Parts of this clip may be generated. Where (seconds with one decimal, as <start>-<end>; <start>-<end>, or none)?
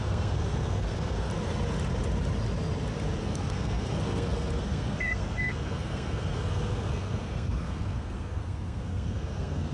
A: 0.0-1.3; 3.2-9.7